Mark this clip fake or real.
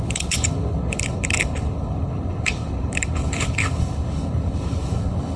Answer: fake